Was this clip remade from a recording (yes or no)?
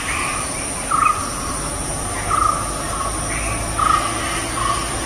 no